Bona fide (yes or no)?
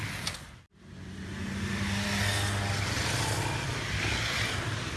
yes